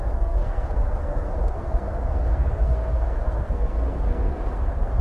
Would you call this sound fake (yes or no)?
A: yes